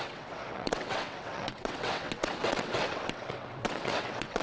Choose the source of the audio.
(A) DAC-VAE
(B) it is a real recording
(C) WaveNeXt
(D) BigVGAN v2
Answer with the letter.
C